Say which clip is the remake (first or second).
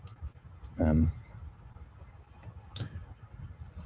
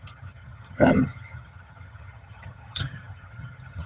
second